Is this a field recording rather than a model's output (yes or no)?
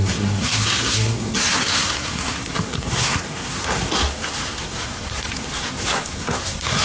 no